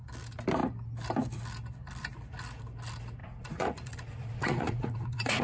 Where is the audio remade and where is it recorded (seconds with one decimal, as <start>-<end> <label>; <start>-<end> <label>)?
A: 0.0-3.2 recorded; 3.2-5.4 remade